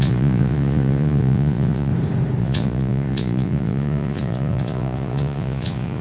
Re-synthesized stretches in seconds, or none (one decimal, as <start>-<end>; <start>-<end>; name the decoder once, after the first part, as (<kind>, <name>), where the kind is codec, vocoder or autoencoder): 0.0-1.9 (vocoder, Vocos); 2.4-6.0